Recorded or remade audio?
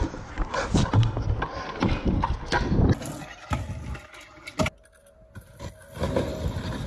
recorded